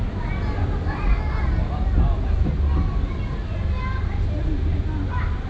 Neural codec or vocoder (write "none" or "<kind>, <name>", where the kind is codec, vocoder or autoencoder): none